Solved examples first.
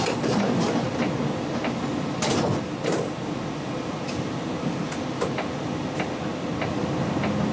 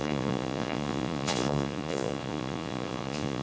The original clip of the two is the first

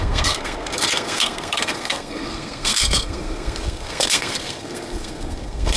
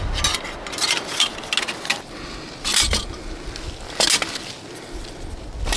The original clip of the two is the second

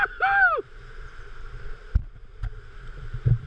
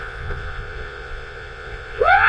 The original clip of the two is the first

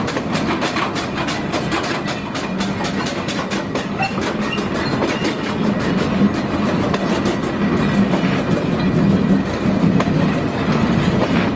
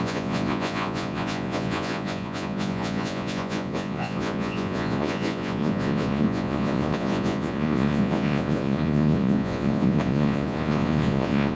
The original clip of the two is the first